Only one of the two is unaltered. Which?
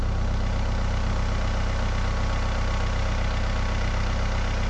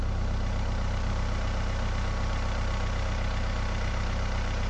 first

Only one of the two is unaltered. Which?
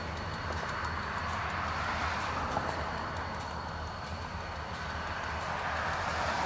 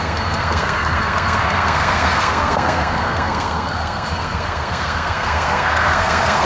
first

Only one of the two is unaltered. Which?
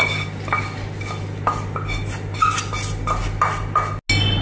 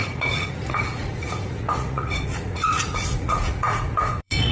first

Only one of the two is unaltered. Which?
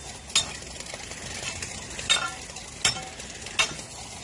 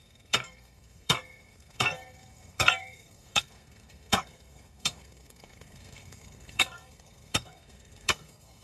first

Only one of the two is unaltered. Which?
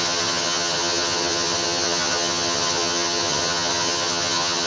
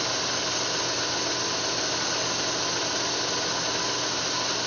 second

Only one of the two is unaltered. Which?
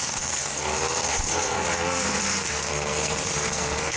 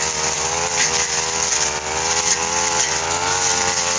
second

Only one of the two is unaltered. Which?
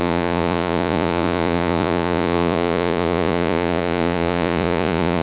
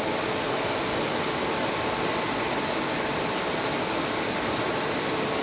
second